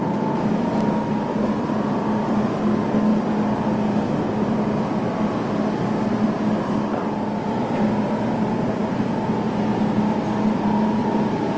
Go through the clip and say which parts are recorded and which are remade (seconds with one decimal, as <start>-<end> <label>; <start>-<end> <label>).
0.0-11.6 recorded